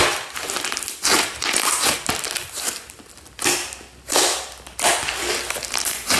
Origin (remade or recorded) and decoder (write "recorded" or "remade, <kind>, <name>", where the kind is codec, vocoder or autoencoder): recorded